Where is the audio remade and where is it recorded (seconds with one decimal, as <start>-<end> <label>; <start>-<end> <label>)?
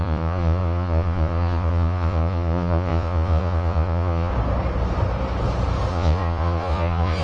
0.0-4.3 remade; 4.3-5.9 recorded; 5.9-7.2 remade